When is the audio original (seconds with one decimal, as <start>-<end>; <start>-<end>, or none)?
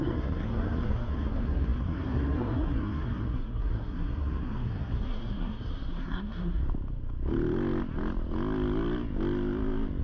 6.6-10.0